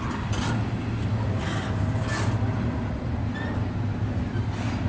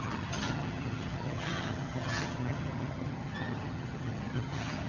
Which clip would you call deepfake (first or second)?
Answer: second